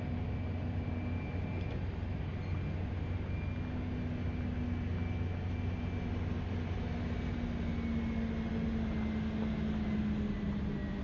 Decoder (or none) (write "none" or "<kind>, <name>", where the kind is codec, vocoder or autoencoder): none